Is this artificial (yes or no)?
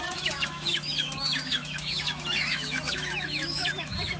yes